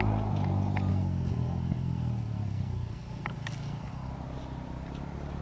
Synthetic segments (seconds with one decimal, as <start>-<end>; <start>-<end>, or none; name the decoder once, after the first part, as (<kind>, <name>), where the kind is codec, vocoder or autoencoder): 0.9-4.1 (codec, SNAC)